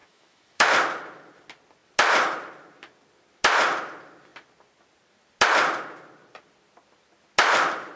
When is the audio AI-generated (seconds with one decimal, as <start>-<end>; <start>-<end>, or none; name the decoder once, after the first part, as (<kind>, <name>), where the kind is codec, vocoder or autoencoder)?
0.0-0.7 (autoencoder, DAC-VAE)